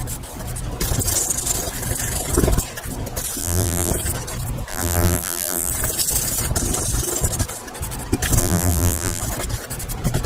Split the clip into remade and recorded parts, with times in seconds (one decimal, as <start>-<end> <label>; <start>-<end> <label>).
0.0-3.4 recorded; 3.4-3.9 remade; 3.9-4.7 recorded; 4.7-5.7 remade; 5.7-8.4 recorded; 8.4-9.2 remade; 9.2-10.3 recorded

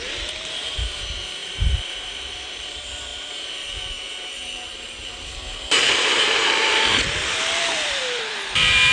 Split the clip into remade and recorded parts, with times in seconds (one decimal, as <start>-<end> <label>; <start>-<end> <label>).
0.0-8.9 remade